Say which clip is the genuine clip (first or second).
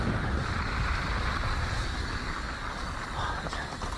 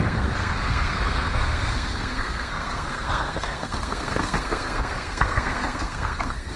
first